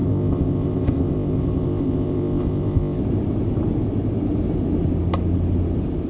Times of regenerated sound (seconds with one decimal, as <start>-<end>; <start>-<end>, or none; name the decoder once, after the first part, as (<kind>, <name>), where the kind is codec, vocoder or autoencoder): 0.0-3.0 (codec, ZipCodec)